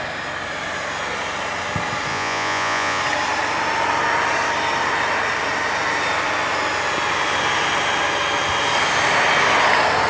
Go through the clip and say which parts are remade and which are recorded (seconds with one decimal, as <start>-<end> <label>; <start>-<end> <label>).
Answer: 0.0-2.1 recorded; 2.1-3.0 remade; 3.0-10.1 recorded